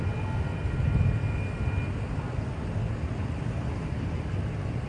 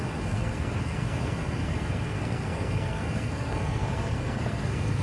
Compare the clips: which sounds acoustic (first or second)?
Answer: first